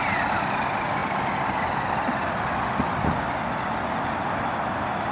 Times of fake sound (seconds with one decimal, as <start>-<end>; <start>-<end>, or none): none